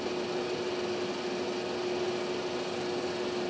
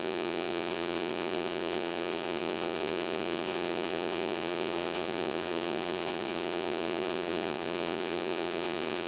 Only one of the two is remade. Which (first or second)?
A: second